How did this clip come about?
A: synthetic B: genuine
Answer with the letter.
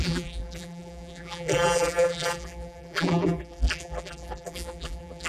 A